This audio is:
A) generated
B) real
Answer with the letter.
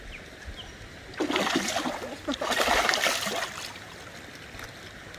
B